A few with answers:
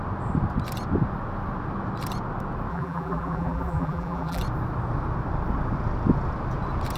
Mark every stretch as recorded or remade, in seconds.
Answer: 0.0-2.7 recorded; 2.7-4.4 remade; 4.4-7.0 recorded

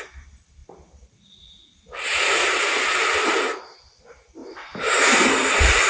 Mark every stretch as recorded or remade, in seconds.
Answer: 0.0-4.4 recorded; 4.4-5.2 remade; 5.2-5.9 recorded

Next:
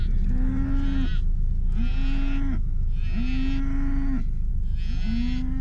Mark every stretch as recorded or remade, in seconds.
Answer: 0.0-5.6 recorded

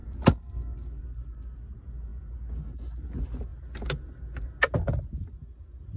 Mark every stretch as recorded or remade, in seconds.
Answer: 0.0-1.0 remade; 1.0-6.0 recorded

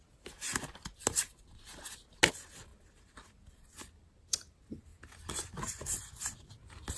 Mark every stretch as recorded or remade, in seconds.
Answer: 0.0-7.0 recorded

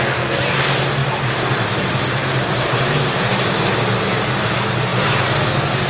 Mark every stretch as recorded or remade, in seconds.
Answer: 0.0-1.0 recorded; 1.0-4.5 remade; 4.5-4.9 recorded; 4.9-5.9 remade

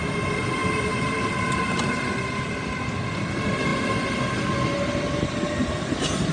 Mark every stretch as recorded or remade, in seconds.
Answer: 0.0-0.6 recorded; 0.6-1.4 remade; 1.4-5.6 recorded; 5.6-6.3 remade

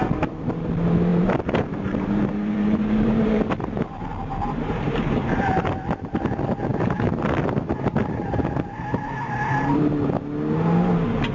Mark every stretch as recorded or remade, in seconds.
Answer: 0.0-1.1 recorded; 1.1-5.7 remade; 5.7-6.7 recorded; 6.7-7.2 remade; 7.2-8.0 recorded; 8.0-9.9 remade; 9.9-11.3 recorded